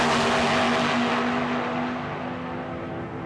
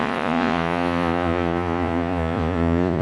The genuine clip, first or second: first